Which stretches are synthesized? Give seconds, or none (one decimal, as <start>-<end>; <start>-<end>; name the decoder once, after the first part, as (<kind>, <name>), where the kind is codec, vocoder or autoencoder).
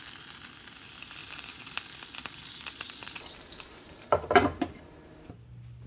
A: 1.2-1.8 (vocoder, BigVGAN v2); 3.0-5.2